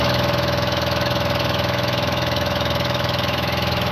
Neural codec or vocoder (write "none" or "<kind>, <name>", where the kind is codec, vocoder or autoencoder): autoencoder, DAC-VAE